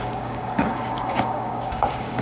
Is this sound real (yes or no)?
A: no